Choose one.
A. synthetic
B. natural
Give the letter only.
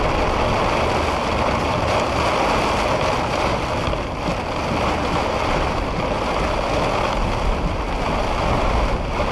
B